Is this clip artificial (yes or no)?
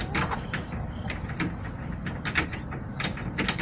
yes